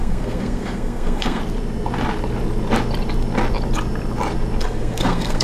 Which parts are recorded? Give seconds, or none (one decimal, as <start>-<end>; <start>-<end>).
1.4-4.6